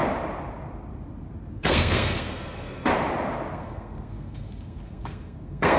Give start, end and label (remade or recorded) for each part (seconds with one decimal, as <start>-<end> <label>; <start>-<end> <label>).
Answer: 0.0-1.5 recorded; 1.5-2.9 remade; 2.9-3.5 recorded; 3.5-5.8 remade